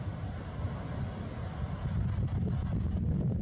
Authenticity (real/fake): real